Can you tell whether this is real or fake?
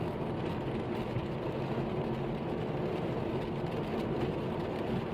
real